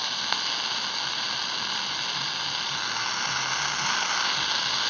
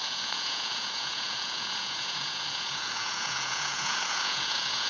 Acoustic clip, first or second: first